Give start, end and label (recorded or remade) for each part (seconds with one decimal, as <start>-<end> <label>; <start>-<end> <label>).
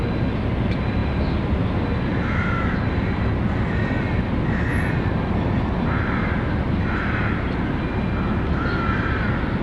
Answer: 0.0-9.6 recorded